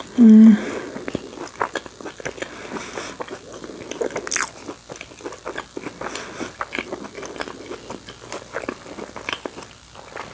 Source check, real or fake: real